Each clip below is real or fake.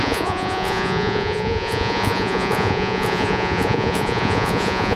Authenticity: fake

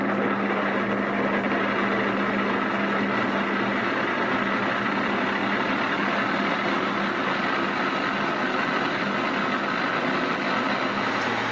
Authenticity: real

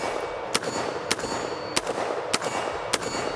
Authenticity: real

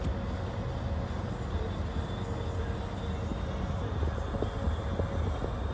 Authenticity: real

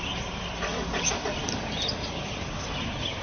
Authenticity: real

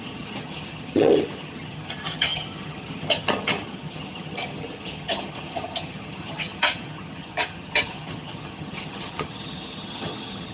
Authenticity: fake